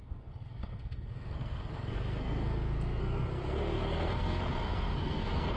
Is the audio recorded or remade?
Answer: remade